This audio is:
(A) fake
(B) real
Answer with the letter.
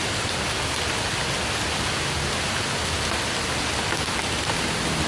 B